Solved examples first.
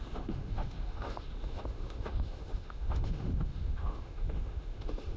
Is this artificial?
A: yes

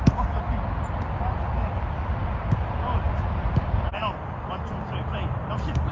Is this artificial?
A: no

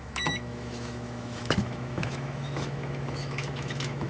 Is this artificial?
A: yes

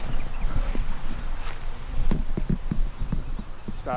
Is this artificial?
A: no